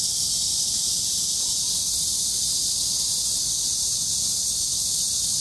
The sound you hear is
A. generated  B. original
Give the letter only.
B